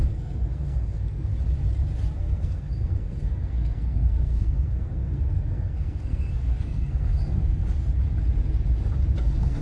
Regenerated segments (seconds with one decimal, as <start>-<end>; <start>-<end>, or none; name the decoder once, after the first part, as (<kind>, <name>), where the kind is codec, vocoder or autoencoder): 0.0-1.3 (codec, SNAC); 2.2-7.6; 9.2-9.6